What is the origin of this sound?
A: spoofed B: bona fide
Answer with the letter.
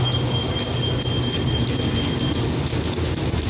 B